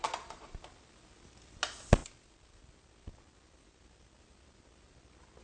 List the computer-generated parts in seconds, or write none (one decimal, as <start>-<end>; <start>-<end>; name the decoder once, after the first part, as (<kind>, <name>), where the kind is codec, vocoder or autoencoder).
0.0-0.6 (vocoder, Vocos)